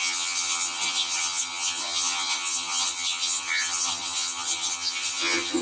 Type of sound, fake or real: fake